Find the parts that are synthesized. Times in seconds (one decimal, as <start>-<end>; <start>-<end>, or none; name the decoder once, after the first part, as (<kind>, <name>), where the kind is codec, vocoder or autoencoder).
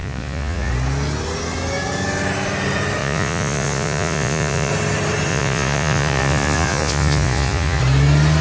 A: 0.0-0.7 (vocoder, Vocos); 3.0-4.7; 5.3-7.8